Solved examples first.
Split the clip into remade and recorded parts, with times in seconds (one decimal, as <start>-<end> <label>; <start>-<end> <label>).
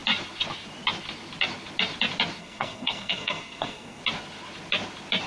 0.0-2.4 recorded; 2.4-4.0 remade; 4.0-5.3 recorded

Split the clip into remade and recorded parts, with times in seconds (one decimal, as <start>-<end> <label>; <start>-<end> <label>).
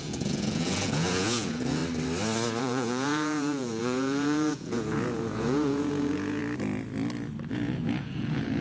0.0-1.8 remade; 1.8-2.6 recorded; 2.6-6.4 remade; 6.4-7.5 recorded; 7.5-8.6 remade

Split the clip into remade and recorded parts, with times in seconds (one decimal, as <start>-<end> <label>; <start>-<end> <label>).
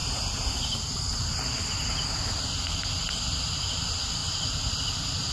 0.0-5.3 recorded